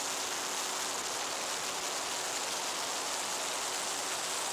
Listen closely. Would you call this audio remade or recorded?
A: recorded